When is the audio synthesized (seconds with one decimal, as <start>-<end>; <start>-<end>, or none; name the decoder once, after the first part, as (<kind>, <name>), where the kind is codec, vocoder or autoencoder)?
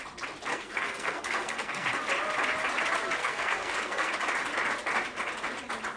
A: 0.5-2.0 (codec, SNAC); 3.2-4.1